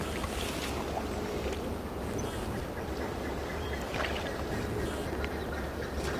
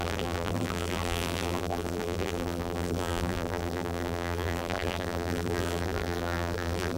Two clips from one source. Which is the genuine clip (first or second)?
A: first